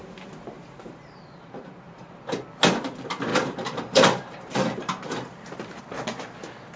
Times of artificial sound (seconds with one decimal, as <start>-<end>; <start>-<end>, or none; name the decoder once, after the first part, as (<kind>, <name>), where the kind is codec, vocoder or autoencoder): 0.0-2.2 (vocoder, BigVGAN v2); 3.3-5.8